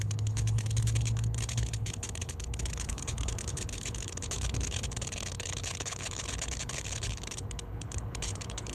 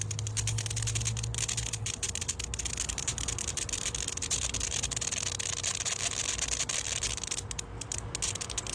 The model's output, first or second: first